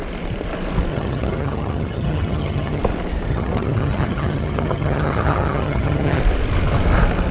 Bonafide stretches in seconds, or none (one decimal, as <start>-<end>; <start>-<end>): 0.0-0.9; 2.8-3.3; 6.2-7.3